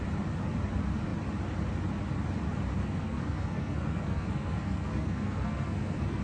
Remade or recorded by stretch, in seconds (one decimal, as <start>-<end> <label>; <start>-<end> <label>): 0.0-2.8 recorded; 2.8-6.2 remade

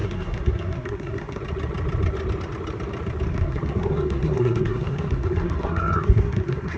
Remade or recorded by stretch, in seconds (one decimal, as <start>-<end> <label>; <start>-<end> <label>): 0.0-1.4 remade; 1.4-3.3 recorded; 3.3-6.8 remade

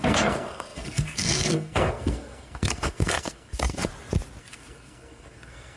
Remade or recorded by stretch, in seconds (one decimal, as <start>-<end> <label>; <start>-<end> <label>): 0.0-3.9 remade; 3.9-4.4 recorded; 4.4-5.8 remade

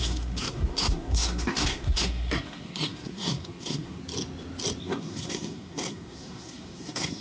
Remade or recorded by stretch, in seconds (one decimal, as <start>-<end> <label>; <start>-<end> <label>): 0.0-4.0 remade; 4.0-4.8 recorded; 4.8-7.2 remade